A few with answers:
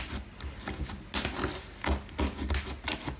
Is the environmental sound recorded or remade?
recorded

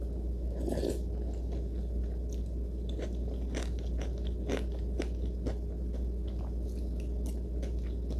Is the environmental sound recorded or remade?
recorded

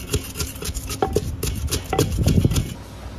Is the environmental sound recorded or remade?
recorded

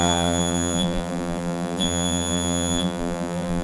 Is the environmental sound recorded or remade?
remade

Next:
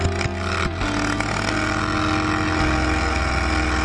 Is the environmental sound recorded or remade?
recorded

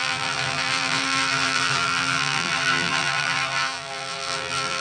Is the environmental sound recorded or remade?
remade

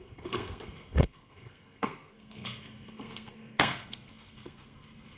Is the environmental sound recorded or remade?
remade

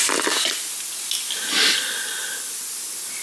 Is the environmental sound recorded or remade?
recorded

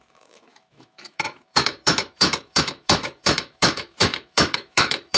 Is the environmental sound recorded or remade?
remade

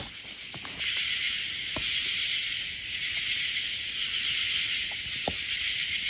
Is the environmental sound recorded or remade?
recorded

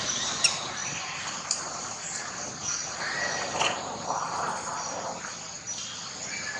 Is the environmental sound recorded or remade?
recorded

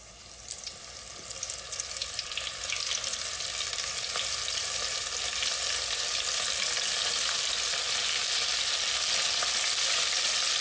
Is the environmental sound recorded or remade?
recorded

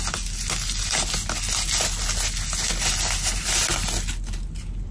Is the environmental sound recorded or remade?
recorded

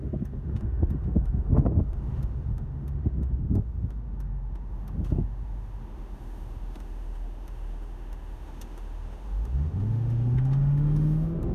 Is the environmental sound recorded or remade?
remade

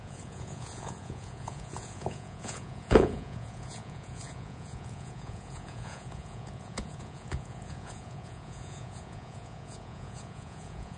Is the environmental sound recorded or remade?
remade